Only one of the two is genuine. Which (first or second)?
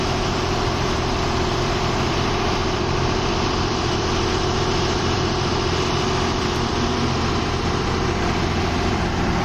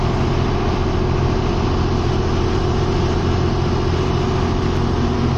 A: second